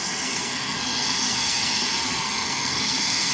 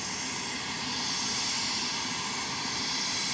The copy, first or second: first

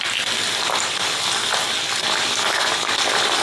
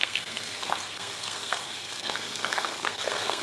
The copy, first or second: second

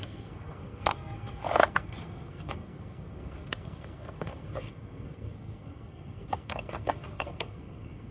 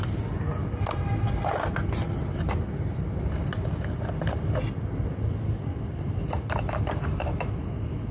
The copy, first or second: first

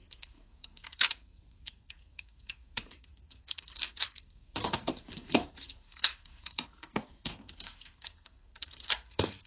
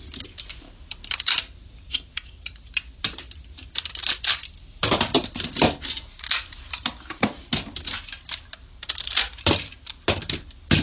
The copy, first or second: first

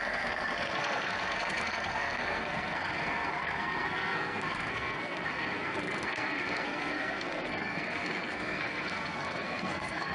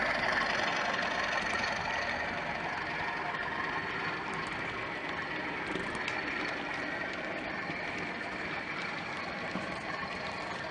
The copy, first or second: first